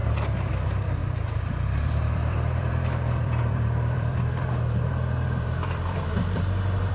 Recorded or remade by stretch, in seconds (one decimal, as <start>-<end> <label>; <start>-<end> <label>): 0.0-0.5 recorded; 0.5-6.9 remade